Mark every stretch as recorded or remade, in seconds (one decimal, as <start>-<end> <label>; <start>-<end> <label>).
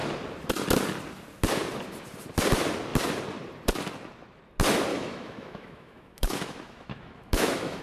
0.0-4.9 recorded; 4.9-7.8 remade